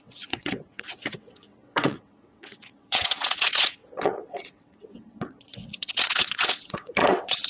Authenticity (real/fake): fake